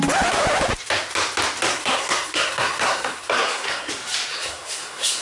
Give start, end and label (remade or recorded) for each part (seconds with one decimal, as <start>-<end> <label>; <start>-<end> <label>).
0.0-1.7 recorded; 1.7-3.9 remade; 3.9-4.3 recorded; 4.3-5.2 remade